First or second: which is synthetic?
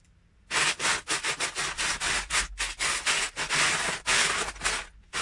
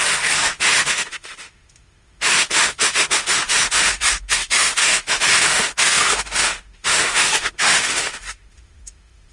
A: second